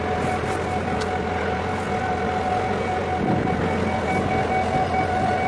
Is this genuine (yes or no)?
yes